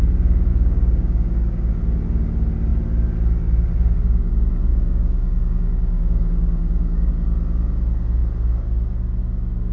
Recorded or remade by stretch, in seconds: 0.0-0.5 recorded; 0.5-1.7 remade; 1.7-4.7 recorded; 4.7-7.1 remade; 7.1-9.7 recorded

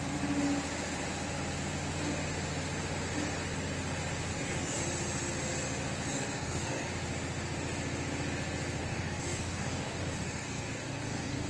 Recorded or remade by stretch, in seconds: 0.0-4.3 recorded; 4.3-4.8 remade; 4.8-6.1 recorded; 6.1-6.9 remade; 6.9-8.8 recorded; 8.8-11.5 remade

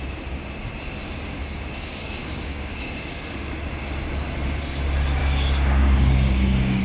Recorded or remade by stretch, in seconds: 0.0-1.0 recorded; 1.0-3.6 remade; 3.6-5.2 recorded; 5.2-6.8 remade

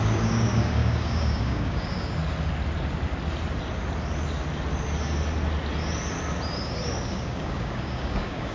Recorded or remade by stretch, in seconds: 0.0-2.2 remade; 2.2-7.1 recorded; 7.1-8.5 remade

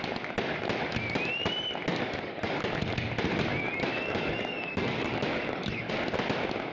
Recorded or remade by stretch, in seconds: 0.0-1.9 recorded; 1.9-2.8 remade; 2.8-3.9 recorded; 3.9-5.9 remade; 5.9-6.7 recorded